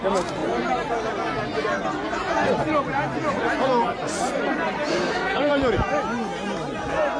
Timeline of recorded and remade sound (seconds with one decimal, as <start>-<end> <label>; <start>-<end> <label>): 0.0-4.9 recorded; 4.9-5.5 remade; 5.5-7.2 recorded